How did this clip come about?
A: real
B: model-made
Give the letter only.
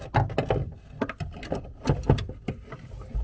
A